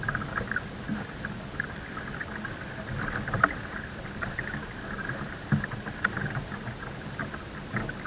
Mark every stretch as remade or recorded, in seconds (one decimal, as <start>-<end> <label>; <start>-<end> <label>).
0.0-8.1 recorded